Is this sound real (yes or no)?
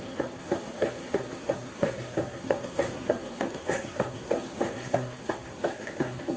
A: no